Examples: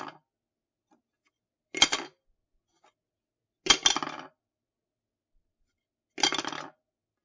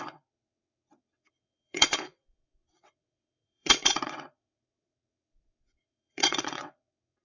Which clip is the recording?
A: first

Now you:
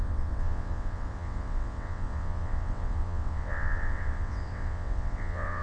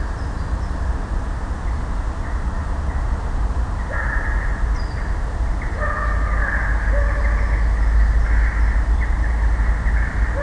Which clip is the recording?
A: second